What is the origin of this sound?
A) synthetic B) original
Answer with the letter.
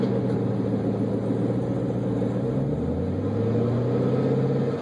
B